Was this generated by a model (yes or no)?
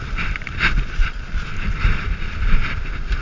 no